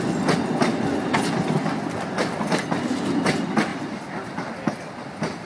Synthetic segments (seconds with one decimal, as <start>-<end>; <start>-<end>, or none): none